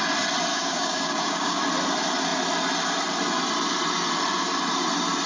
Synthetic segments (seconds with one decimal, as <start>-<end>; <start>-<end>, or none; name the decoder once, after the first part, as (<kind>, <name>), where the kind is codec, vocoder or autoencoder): 0.5-1.6 (codec, DAC)